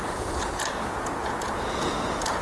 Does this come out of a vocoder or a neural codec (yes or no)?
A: yes